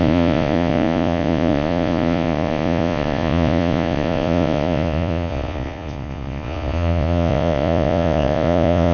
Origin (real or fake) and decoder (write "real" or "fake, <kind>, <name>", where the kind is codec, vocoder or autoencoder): fake, vocoder, Vocos